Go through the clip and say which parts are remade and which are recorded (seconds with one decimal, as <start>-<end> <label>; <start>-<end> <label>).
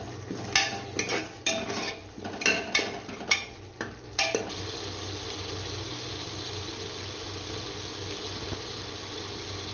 0.0-9.7 recorded